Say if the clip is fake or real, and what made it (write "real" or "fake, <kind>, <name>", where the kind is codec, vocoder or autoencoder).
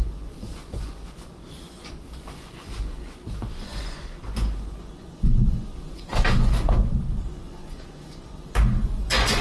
fake, vocoder, Vocos